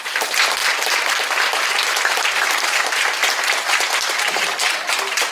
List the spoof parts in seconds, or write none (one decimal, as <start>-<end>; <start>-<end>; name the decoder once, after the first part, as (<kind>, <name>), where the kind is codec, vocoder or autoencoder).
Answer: 0.0-0.6 (vocoder, BigVGAN v2); 1.6-3.2